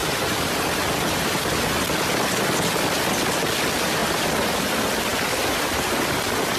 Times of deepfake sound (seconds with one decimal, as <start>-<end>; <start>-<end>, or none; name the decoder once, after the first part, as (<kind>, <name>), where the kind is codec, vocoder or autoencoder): none